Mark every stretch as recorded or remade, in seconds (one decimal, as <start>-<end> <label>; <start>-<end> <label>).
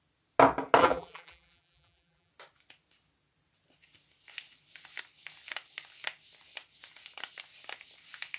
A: 0.0-0.8 recorded; 0.8-2.3 remade; 2.3-8.4 recorded